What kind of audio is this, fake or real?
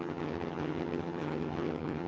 fake